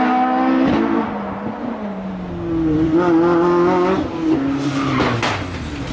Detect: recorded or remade recorded